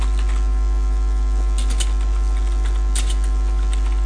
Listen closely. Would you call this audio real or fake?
real